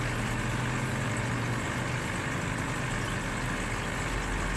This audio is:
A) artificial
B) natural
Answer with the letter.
B